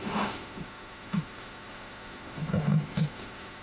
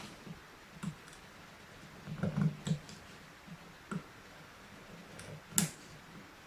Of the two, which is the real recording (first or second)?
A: second